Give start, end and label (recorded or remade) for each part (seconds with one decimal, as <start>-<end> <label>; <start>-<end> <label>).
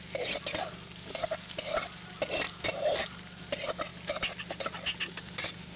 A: 0.0-5.8 recorded